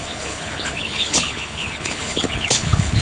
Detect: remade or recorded remade